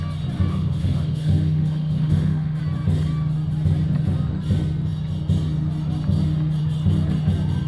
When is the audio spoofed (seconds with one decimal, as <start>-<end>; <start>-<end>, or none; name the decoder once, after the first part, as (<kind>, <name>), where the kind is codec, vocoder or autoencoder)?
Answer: 0.5-2.6 (autoencoder, DAC-VAE)